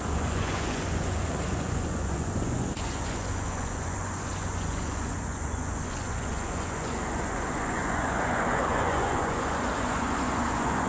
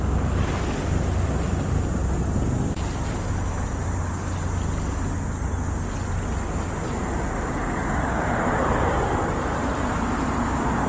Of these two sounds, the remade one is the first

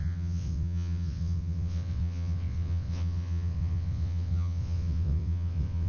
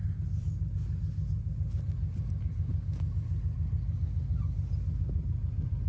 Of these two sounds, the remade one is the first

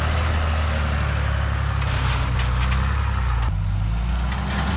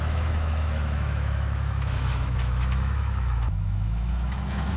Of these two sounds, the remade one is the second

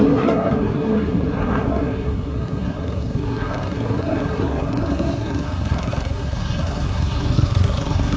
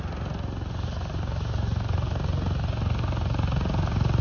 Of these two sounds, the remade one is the first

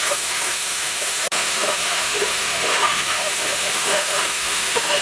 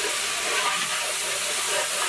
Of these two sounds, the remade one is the first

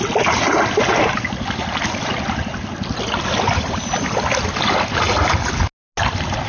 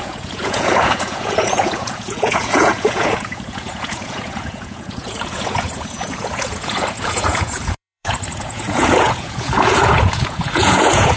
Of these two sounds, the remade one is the second